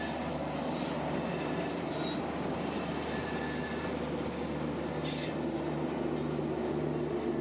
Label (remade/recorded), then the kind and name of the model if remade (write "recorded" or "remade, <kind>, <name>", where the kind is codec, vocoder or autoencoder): recorded